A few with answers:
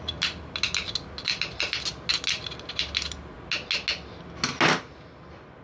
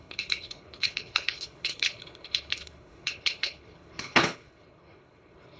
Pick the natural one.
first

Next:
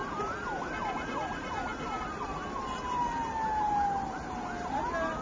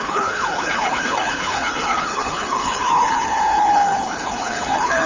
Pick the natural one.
first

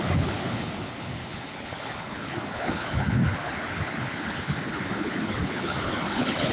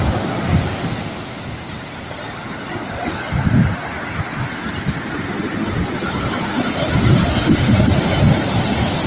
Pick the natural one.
second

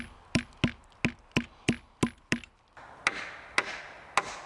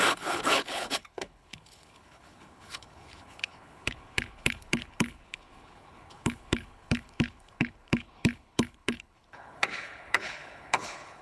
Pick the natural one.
first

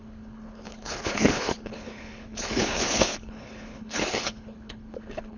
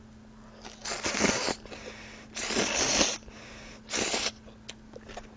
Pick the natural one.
second